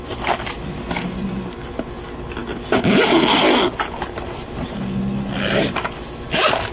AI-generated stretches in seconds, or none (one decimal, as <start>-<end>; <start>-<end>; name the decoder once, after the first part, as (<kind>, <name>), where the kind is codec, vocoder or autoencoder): none